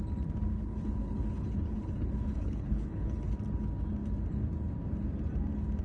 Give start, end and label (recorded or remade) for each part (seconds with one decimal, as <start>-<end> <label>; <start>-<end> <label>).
0.0-0.5 recorded; 0.5-3.3 remade; 3.3-5.8 recorded